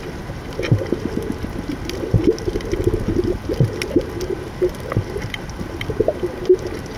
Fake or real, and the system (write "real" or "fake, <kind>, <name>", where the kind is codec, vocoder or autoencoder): real